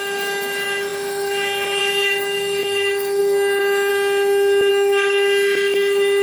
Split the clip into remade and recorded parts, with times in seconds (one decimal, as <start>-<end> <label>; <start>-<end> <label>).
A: 0.0-3.9 remade; 3.9-4.7 recorded; 4.7-6.2 remade